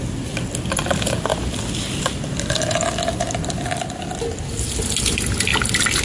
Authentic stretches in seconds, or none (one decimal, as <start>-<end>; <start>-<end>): 0.0-6.0